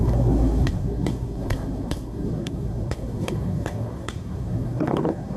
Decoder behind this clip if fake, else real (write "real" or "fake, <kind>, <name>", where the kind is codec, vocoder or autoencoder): fake, codec, SNAC